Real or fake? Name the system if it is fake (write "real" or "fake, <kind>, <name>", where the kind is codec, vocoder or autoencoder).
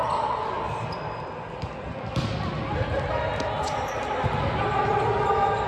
real